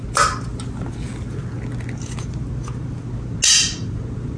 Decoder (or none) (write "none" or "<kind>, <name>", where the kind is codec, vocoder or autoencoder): none